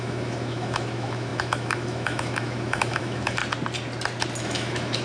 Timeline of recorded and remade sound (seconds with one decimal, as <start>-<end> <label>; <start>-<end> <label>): 0.0-3.4 remade; 3.4-4.4 recorded; 4.4-5.0 remade